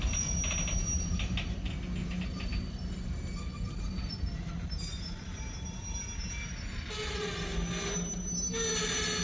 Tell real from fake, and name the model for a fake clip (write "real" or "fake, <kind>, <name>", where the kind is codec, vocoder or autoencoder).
real